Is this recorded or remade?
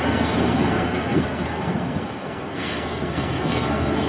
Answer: remade